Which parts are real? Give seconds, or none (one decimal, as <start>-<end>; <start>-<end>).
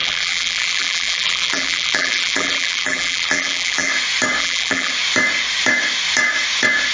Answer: 3.9-4.4; 4.9-6.9